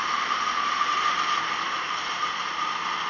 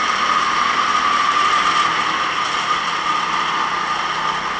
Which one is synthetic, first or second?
first